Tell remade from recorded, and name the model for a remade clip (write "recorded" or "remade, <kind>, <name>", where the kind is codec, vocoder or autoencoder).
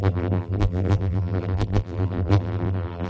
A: remade, vocoder, BigVGAN v2